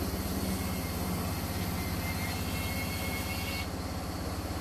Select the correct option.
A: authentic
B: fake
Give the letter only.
A